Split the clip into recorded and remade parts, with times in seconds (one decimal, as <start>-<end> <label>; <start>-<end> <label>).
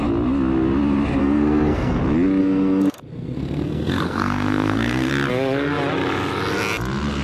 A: 0.0-1.2 recorded; 1.2-2.0 remade; 2.0-2.4 recorded; 2.4-5.1 remade; 5.1-7.2 recorded